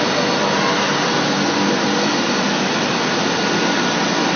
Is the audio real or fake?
real